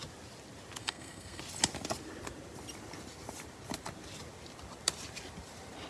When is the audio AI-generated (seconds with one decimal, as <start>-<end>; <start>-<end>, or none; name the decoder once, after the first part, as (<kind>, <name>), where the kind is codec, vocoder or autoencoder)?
0.8-1.4 (codec, SNAC)